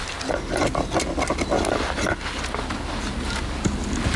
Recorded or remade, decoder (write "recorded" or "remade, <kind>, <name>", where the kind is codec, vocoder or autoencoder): recorded